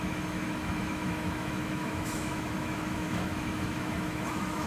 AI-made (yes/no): yes